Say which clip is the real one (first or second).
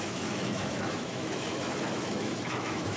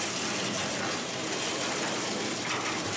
second